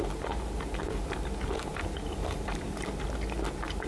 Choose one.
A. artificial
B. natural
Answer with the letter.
B